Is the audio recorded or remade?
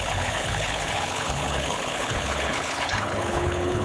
remade